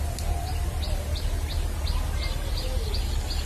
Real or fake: real